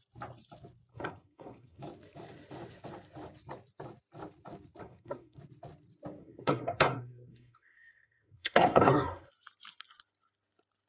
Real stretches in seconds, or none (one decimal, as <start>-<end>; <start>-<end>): 0.0-0.9; 1.8-4.8; 5.4-6.2; 9.3-10.9